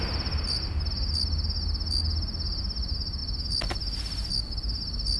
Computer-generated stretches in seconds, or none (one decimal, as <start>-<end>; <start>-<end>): none